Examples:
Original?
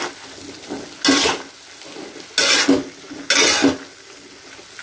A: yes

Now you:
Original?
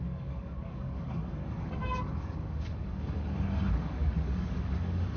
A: no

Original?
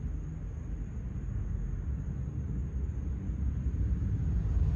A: yes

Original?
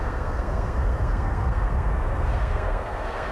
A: no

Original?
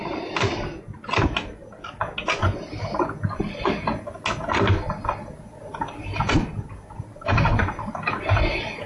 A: yes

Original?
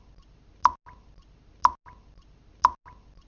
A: yes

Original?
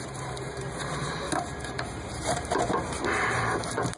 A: no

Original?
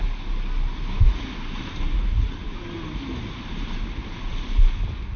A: yes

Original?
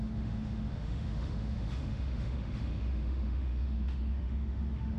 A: no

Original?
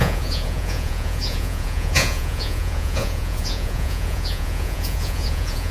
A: no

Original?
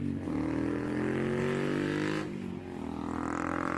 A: yes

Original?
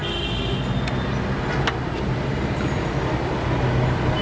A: yes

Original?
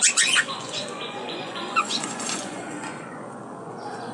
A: no